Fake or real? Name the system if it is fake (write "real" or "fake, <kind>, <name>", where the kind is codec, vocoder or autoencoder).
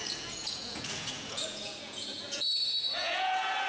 fake, vocoder, Vocos